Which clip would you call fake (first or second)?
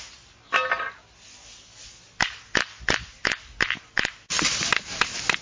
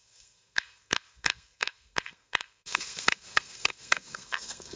second